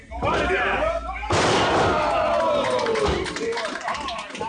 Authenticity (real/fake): real